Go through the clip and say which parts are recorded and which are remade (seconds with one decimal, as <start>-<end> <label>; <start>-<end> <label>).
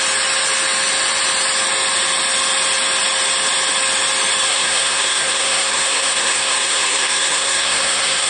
0.0-4.5 recorded; 4.5-8.3 remade